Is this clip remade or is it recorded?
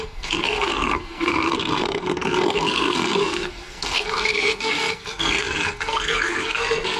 remade